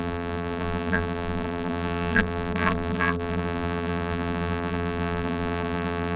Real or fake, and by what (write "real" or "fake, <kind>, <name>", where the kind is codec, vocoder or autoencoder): fake, vocoder, BigVGAN v2